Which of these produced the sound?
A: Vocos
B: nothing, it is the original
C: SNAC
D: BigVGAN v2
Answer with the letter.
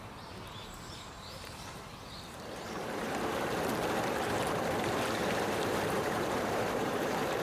D